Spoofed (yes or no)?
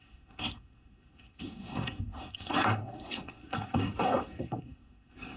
yes